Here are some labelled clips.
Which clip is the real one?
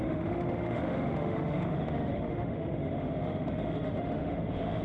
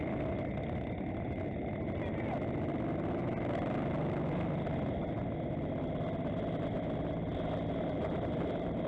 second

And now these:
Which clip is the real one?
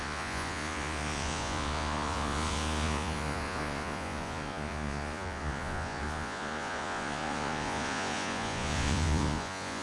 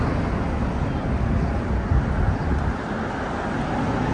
second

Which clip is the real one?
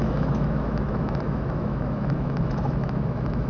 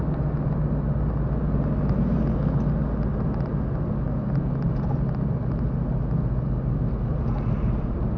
second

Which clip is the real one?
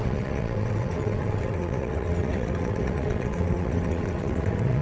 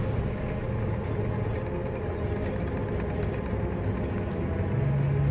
second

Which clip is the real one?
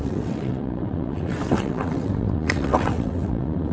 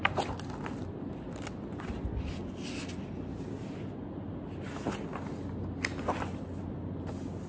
second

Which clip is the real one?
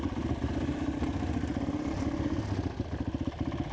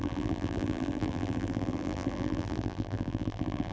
first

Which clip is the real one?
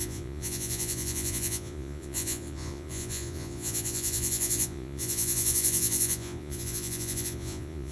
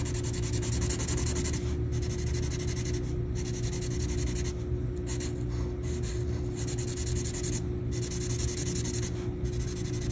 second